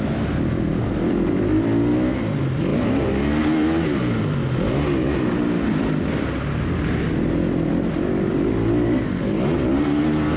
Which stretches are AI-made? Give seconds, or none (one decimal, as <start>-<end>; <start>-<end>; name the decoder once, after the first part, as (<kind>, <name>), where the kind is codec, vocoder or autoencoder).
none

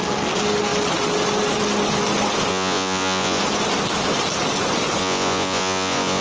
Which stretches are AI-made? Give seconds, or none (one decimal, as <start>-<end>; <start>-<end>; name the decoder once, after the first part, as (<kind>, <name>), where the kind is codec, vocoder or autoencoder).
2.5-3.4 (vocoder, Vocos); 5.0-6.2

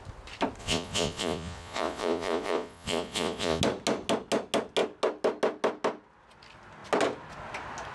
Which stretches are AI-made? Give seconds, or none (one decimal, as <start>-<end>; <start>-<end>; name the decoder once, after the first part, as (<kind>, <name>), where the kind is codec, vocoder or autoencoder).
0.6-3.6 (vocoder, Vocos)

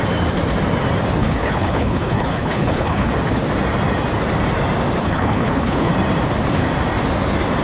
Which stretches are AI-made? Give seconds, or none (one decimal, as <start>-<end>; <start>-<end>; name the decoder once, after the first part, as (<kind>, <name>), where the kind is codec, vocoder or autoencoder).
1.2-3.1 (codec, HILCodec); 5.0-5.9

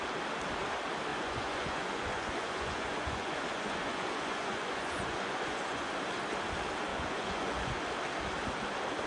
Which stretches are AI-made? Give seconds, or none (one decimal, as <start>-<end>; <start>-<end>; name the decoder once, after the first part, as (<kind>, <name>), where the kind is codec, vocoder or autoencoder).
1.1-5.9 (vocoder, Vocos); 6.9-7.8

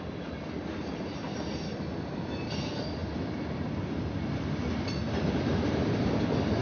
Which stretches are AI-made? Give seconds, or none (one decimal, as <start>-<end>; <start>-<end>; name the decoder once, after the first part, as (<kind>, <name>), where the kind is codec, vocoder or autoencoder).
none

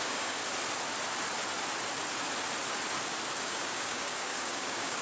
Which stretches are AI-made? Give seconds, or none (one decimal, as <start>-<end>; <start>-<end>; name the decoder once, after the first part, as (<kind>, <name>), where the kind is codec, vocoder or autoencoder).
0.0-0.4 (codec, DAC); 3.4-5.0

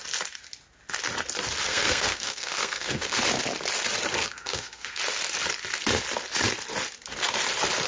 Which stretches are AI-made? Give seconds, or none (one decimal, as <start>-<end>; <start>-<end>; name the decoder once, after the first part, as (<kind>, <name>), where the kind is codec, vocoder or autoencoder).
1.7-3.2 (codec, SNAC); 4.2-5.0